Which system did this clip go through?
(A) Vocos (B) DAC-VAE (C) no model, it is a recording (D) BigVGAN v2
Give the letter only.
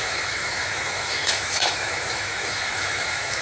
B